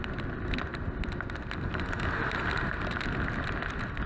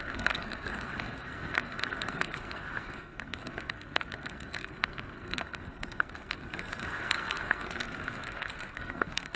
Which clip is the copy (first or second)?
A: second